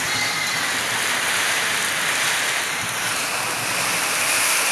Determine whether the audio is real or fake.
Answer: real